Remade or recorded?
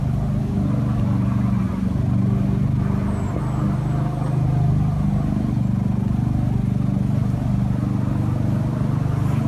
recorded